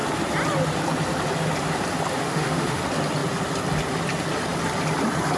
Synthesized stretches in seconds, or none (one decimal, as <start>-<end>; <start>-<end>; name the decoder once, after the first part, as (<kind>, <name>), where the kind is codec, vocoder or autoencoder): 2.2-2.8 (autoencoder, DAC-VAE)